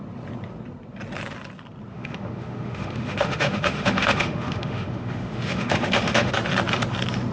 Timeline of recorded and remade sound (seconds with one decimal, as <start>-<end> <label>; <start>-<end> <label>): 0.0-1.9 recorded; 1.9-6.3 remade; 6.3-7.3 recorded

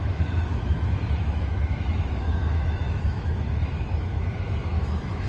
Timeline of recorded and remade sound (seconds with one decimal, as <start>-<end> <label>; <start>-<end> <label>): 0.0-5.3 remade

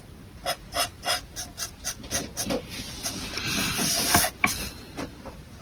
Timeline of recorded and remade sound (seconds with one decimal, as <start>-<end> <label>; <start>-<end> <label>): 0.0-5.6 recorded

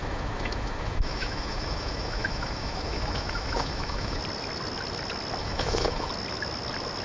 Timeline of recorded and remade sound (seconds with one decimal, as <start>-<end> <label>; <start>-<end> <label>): 0.0-4.2 remade; 4.2-5.4 recorded; 5.4-6.1 remade; 6.1-7.0 recorded

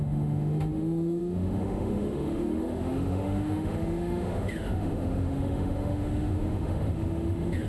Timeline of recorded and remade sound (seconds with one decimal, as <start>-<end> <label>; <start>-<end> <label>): 0.0-7.7 remade